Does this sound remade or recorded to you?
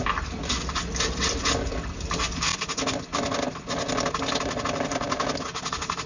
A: recorded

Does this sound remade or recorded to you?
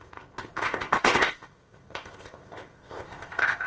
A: remade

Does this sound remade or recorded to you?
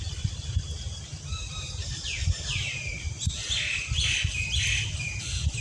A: recorded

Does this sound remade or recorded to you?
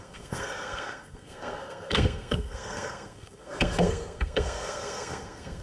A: remade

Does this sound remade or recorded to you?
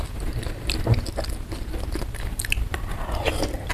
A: recorded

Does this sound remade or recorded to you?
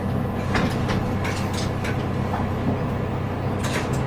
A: recorded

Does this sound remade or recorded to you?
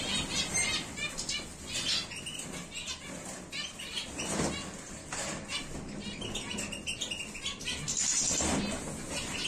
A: recorded